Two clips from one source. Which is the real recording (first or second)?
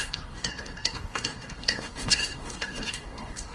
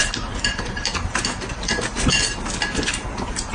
second